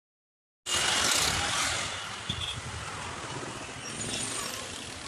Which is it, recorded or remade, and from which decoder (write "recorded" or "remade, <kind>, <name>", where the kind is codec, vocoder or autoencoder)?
recorded